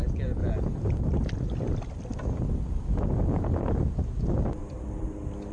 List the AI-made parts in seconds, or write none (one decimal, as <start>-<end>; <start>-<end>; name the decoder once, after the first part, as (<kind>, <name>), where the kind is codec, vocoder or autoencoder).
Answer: none